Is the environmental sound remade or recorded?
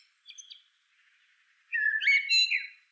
recorded